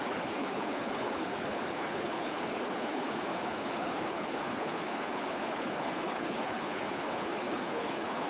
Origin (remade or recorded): remade